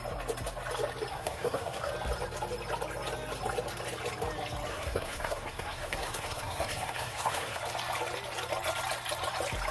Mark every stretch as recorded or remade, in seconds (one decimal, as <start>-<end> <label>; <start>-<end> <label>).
0.0-1.1 recorded; 1.1-1.9 remade; 1.9-4.7 recorded; 4.7-7.6 remade; 7.6-9.7 recorded